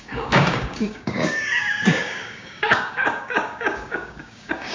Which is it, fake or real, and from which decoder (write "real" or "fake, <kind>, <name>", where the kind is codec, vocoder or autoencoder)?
fake, codec, DAC